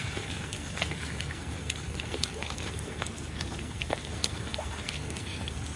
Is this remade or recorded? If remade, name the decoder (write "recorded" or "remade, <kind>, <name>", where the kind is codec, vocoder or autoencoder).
remade, codec, SNAC